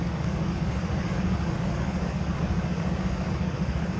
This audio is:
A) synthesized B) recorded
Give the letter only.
A